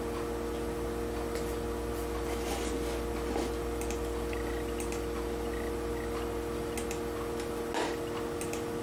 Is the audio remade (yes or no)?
no